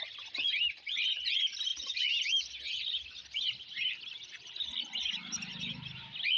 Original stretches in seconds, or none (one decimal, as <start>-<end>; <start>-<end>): 0.0-6.4